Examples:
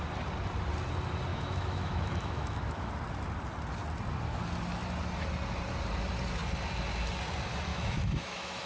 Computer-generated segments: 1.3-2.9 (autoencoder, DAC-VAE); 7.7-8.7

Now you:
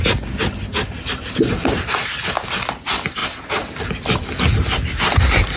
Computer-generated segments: none

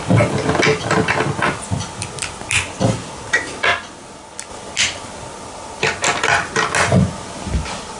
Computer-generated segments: none

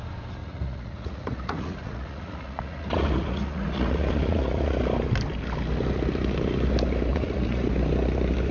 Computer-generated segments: 0.4-4.8 (vocoder, Vocos); 7.1-7.7

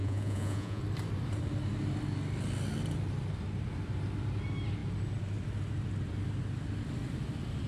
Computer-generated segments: 0.0-0.8 (vocoder, Vocos)

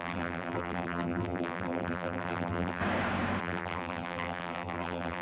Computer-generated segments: 0.0-2.8 (vocoder, BigVGAN v2); 3.4-5.2